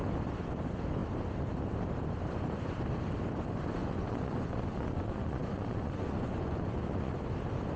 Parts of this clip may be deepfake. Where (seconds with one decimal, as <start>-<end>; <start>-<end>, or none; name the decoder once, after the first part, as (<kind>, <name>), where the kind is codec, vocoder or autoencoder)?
3.8-7.1 (vocoder, Vocos)